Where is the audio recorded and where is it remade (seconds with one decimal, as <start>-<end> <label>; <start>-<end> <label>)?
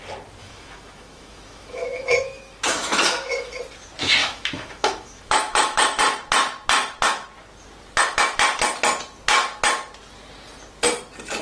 0.0-0.4 recorded; 0.4-3.6 remade; 3.6-4.2 recorded; 4.2-6.0 remade; 6.0-11.4 recorded